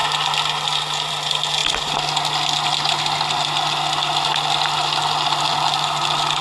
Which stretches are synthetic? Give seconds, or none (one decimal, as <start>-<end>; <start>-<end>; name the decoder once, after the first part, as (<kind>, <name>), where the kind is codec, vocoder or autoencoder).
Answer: none